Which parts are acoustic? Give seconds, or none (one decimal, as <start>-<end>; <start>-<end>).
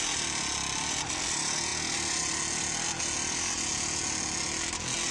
0.0-5.1